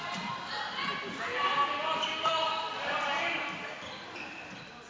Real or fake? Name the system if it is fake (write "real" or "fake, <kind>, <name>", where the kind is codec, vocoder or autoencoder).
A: fake, vocoder, BigVGAN v2